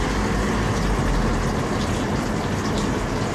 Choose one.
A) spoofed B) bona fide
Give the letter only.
B